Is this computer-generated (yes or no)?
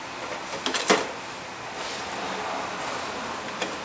no